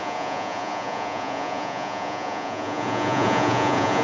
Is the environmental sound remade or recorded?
remade